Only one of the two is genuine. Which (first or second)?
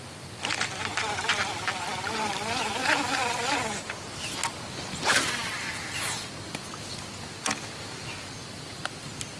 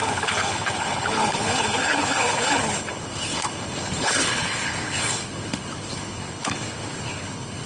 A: first